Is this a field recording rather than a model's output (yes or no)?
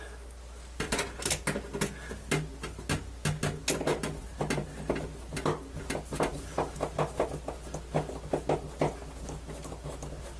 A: yes